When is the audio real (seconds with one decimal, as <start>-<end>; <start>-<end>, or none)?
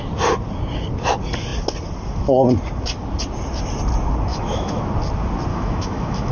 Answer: 0.0-4.3; 4.8-5.5